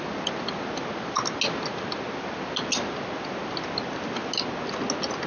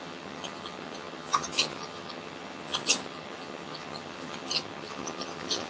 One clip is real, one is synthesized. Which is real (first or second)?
first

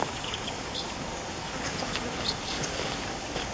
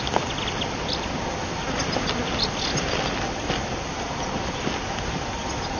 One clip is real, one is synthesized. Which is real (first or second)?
second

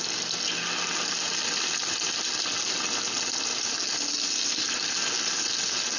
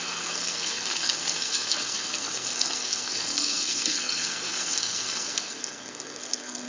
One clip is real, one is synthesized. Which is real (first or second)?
first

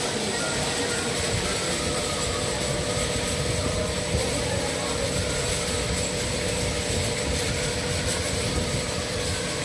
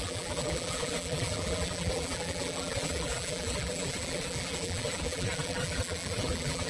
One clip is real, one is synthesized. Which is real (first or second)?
first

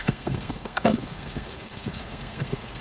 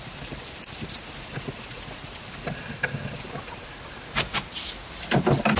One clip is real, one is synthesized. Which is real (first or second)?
second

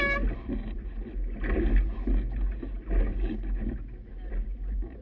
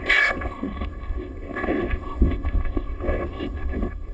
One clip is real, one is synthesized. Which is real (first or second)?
first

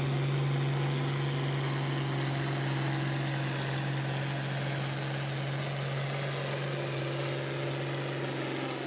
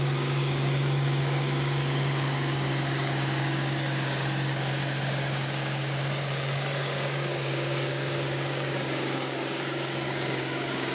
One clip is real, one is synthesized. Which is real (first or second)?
first